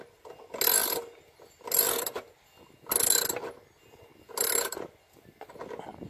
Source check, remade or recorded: recorded